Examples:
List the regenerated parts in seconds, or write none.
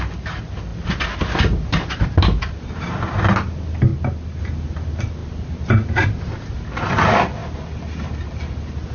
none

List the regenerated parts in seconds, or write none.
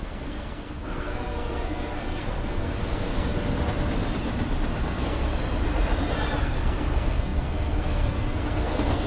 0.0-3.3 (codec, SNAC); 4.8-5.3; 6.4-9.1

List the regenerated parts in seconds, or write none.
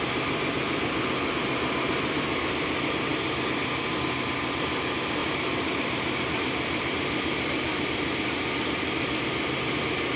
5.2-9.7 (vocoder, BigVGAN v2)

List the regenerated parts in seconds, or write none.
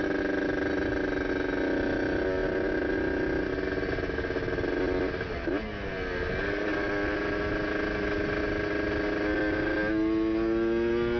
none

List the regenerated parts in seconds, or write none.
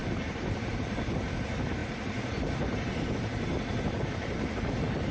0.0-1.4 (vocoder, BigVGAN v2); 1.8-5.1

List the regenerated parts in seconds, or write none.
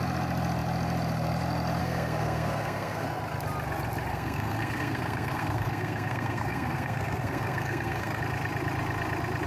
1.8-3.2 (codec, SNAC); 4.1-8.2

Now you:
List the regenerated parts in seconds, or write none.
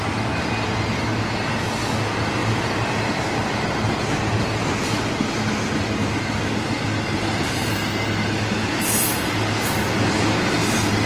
2.4-4.0 (vocoder, BigVGAN v2)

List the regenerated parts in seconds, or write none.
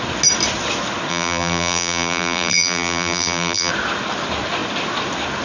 1.1-3.7 (vocoder, BigVGAN v2)